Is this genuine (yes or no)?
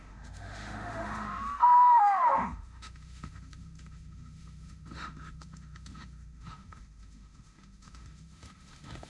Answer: no